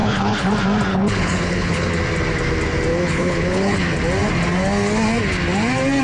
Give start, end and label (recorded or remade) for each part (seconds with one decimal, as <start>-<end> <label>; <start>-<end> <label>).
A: 0.0-0.5 remade; 0.5-0.9 recorded; 0.9-1.9 remade; 1.9-2.9 recorded; 2.9-3.8 remade; 3.8-6.0 recorded